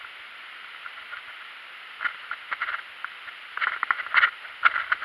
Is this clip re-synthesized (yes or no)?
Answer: no